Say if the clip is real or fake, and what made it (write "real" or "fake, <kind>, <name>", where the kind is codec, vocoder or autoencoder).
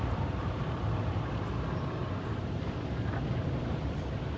real